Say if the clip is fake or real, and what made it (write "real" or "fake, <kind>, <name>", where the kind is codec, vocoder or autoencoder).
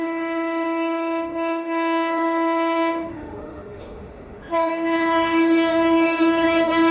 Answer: fake, autoencoder, DAC-VAE